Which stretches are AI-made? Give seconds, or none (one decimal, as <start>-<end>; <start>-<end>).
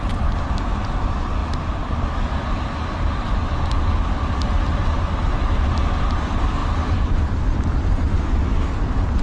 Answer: none